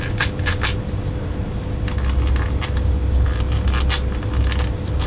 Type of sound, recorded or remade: recorded